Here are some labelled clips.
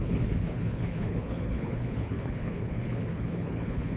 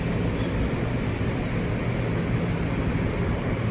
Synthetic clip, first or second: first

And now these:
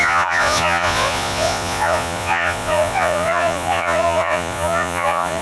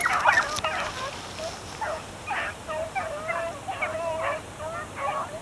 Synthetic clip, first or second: first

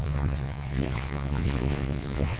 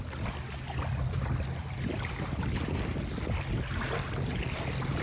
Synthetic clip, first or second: first